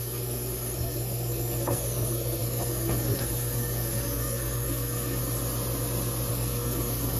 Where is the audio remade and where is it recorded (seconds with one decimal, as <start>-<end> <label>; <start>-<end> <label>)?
0.0-5.2 remade; 5.2-6.3 recorded; 6.3-7.2 remade